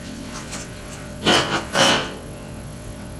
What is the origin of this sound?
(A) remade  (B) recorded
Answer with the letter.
A